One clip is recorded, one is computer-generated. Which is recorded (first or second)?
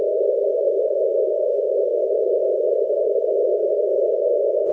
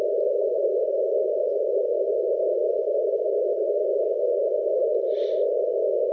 second